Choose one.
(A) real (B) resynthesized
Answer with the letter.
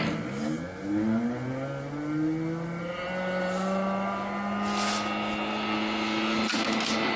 A